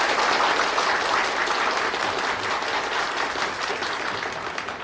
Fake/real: real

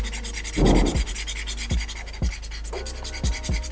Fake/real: real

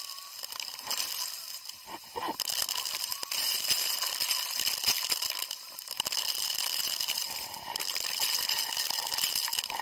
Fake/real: real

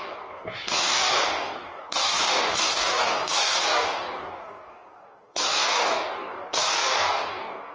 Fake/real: fake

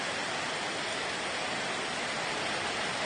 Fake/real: real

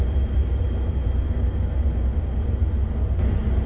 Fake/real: real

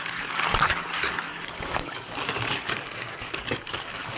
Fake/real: fake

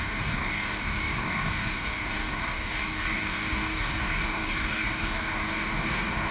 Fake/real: fake